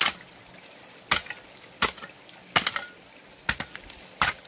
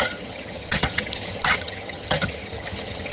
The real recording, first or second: first